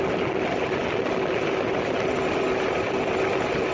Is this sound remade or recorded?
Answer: recorded